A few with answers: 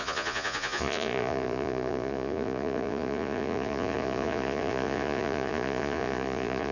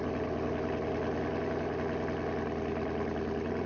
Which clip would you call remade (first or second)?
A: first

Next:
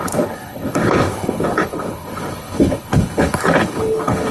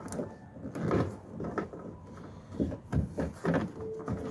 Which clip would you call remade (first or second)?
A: first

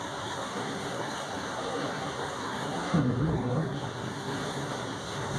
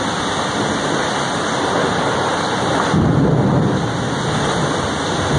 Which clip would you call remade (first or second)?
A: first